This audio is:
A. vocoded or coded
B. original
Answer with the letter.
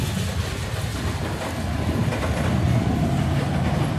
B